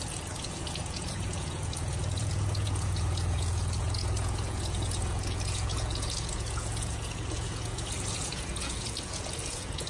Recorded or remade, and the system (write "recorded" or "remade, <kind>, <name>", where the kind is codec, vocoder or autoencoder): remade, vocoder, Vocos